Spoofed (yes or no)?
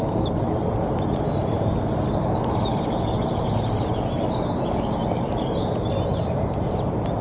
yes